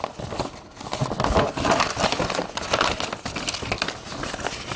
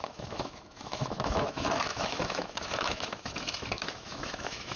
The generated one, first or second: second